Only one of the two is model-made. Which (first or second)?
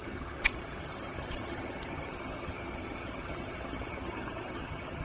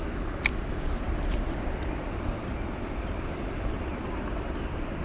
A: first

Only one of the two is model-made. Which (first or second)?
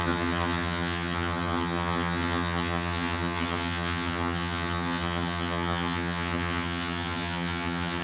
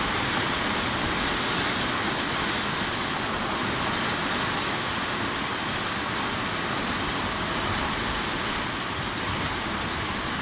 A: first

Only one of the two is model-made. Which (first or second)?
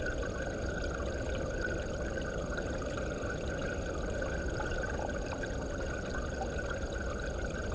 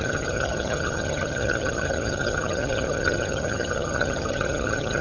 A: second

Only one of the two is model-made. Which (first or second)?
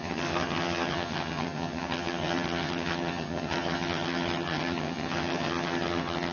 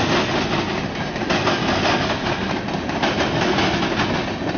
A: first